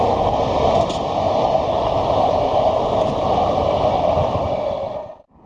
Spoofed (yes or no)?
no